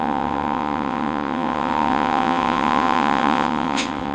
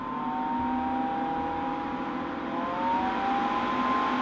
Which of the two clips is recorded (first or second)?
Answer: second